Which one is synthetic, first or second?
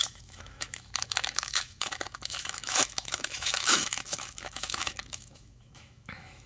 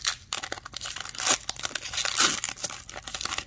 first